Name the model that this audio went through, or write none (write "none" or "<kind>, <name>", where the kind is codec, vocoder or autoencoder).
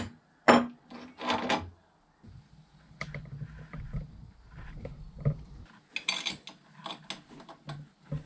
none